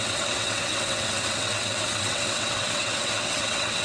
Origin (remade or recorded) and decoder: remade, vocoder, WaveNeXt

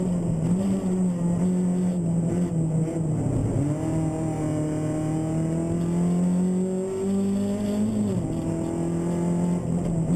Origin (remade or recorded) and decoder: recorded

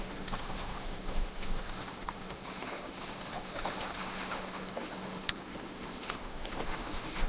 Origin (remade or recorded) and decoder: remade, autoencoder, DAC-VAE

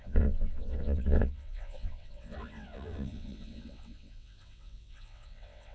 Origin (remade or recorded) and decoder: remade, vocoder, WaveNeXt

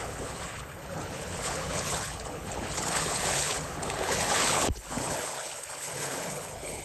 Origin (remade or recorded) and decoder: remade, codec, HILCodec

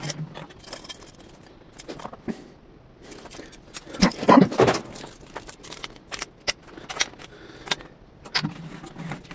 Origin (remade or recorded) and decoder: recorded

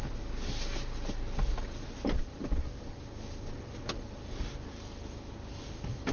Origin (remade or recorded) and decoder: recorded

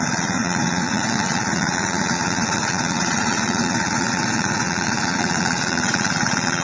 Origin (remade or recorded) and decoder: remade, vocoder, Vocos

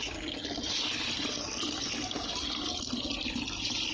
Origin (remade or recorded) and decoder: recorded